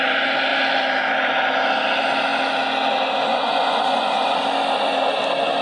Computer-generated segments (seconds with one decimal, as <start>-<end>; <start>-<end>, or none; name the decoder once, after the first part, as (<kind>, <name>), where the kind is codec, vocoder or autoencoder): 3.3-4.4 (vocoder, Vocos)